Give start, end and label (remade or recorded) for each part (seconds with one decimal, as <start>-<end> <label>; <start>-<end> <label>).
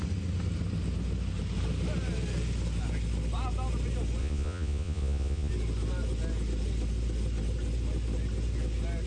0.0-4.2 recorded; 4.2-5.5 remade; 5.5-9.1 recorded